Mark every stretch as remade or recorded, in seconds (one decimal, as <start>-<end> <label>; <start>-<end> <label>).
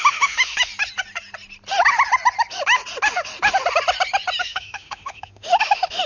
0.0-0.7 remade; 0.7-4.4 recorded; 4.4-6.1 remade